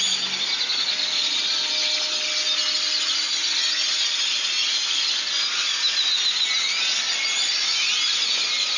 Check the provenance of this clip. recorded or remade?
recorded